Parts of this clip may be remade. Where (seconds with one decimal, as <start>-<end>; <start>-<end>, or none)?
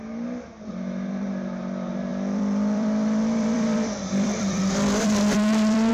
2.1-5.9